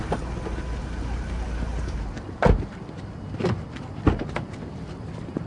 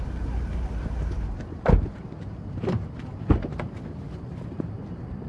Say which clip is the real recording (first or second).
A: first